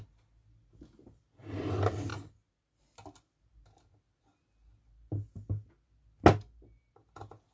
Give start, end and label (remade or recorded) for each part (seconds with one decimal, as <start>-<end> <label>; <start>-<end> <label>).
0.0-7.5 recorded

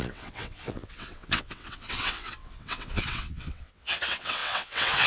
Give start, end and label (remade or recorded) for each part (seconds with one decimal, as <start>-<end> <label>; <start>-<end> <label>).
0.0-5.1 remade